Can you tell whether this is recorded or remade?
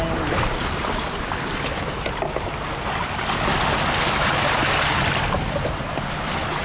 recorded